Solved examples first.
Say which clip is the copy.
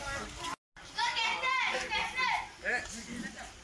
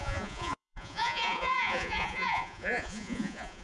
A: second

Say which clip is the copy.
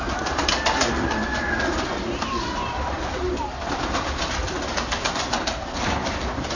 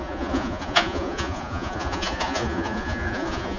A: second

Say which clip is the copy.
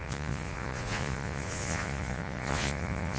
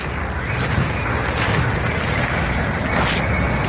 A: first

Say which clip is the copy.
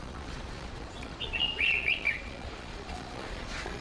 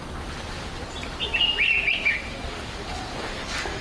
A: first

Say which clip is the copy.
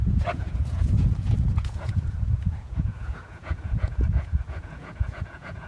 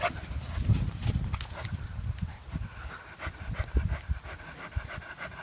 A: first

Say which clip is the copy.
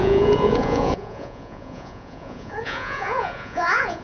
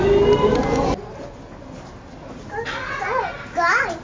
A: first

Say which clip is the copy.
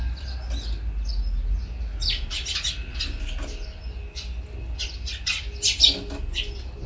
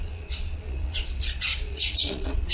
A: second